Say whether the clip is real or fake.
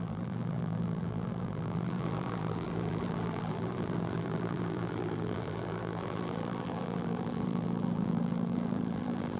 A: fake